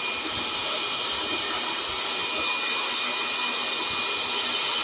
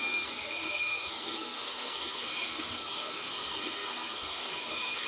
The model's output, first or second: second